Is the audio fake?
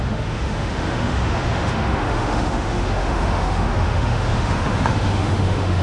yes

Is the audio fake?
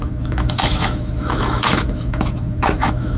yes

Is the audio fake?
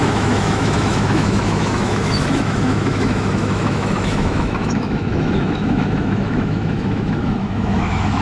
yes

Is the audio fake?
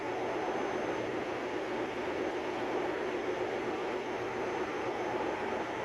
no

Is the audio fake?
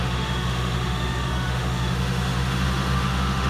yes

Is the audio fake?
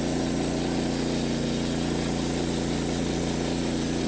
no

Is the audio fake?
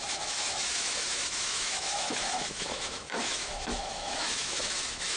yes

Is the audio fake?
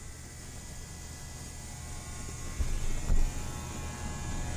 no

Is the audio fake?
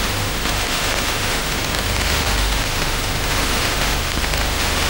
yes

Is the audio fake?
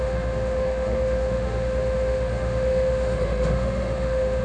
yes